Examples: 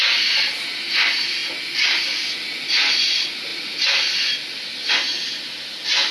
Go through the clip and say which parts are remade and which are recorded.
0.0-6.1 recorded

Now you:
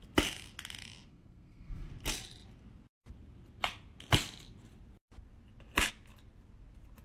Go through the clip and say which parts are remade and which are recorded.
0.0-1.1 recorded; 1.1-1.9 remade; 1.9-7.0 recorded

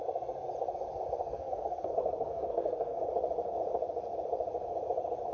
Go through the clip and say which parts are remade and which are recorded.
0.0-1.2 recorded; 1.2-3.0 remade; 3.0-5.3 recorded

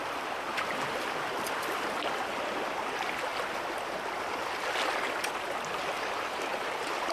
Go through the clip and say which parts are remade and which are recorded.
0.0-7.1 recorded

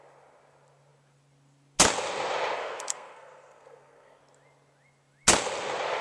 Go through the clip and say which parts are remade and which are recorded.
0.0-2.6 recorded; 2.6-4.2 remade; 4.2-6.0 recorded

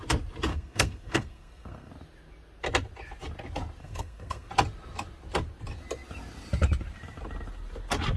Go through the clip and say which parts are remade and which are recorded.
0.0-0.5 recorded; 0.5-1.9 remade; 1.9-3.8 recorded; 3.8-4.5 remade; 4.5-8.2 recorded

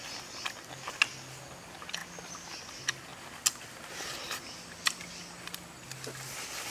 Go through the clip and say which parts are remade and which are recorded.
0.0-6.7 recorded